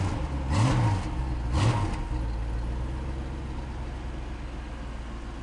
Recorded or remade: recorded